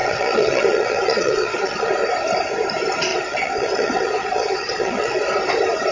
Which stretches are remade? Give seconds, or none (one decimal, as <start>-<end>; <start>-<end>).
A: 0.0-1.9; 3.1-5.2